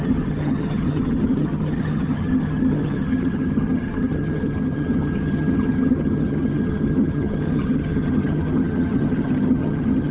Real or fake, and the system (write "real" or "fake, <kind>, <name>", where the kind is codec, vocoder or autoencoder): fake, vocoder, HiFi-GAN